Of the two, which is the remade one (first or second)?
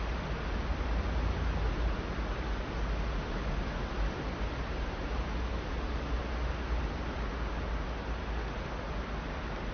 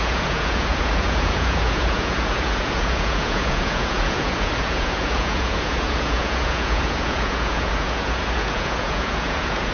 second